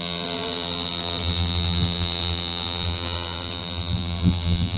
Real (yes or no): no